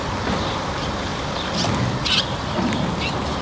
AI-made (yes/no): no